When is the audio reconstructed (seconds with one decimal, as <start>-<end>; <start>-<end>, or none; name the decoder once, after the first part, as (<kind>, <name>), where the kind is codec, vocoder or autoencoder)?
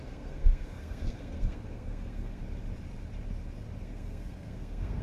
0.0-2.4 (codec, SNAC); 3.8-5.0